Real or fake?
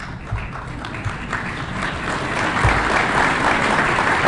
real